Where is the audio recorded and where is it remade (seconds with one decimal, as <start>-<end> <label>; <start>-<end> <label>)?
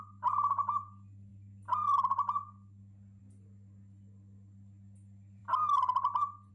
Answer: 0.0-6.5 recorded